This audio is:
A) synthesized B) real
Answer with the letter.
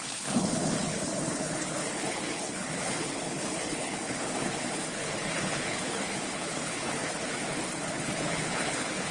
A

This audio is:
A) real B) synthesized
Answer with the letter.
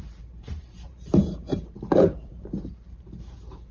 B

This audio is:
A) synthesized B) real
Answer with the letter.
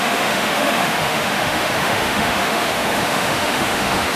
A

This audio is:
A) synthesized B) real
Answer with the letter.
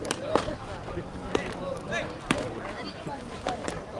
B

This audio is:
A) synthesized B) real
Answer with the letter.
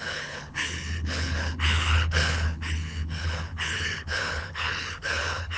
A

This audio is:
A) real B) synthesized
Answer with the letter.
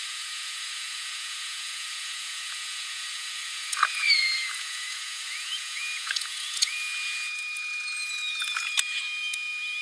B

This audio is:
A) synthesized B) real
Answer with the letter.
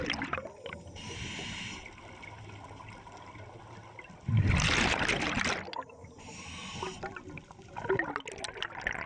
B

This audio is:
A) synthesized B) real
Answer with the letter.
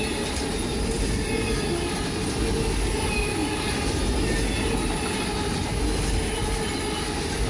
B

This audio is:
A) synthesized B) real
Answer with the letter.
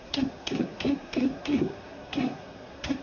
A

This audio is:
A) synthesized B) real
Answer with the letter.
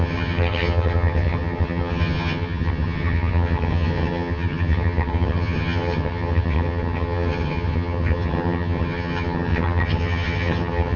A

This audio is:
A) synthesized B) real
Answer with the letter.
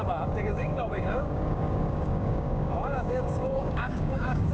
A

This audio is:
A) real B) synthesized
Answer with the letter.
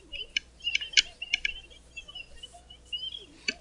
A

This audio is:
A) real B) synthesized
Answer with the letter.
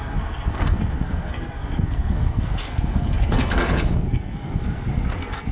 B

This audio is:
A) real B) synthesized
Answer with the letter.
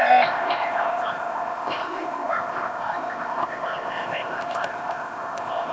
B